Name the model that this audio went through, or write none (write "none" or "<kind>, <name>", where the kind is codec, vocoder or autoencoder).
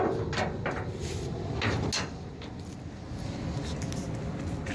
none